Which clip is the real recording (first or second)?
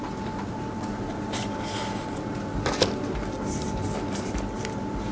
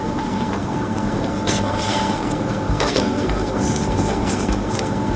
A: first